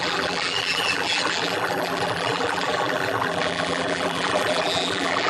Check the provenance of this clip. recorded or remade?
remade